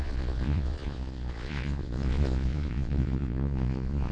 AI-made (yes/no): yes